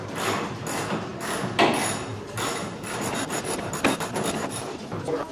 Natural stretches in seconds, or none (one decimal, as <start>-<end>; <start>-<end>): 0.0-2.1; 3.7-5.3